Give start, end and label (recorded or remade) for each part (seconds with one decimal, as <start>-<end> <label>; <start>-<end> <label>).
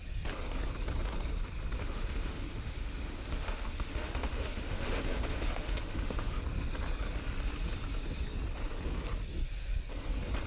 0.0-1.8 recorded; 1.8-6.4 remade; 6.4-10.5 recorded